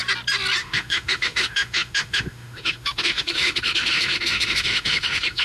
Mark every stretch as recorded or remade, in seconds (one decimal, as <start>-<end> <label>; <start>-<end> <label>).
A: 0.0-0.6 recorded; 0.6-5.4 remade